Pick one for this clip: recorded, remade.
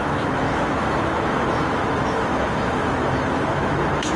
remade